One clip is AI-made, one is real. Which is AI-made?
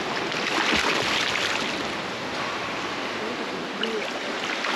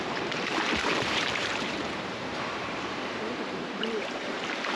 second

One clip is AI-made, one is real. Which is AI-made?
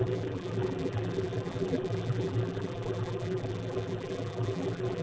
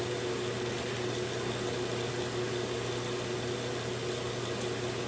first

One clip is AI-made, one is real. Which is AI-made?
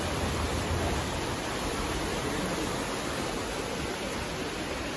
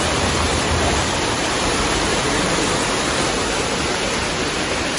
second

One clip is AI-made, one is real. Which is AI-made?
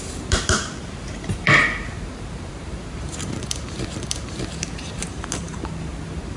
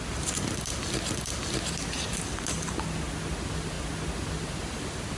first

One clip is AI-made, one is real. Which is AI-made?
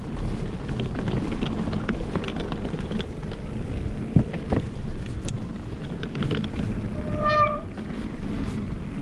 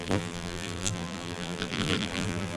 second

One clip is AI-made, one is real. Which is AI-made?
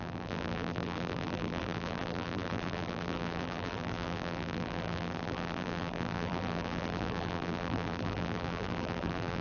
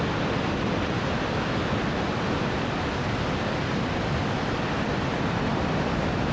first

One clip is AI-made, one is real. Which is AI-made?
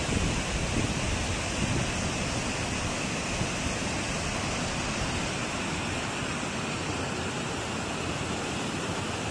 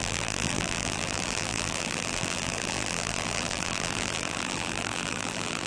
second